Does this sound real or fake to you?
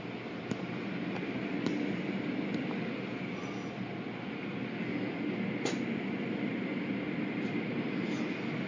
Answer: real